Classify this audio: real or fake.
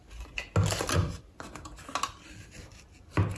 real